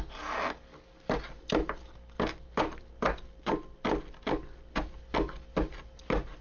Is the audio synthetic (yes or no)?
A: no